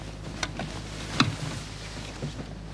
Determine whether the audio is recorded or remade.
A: remade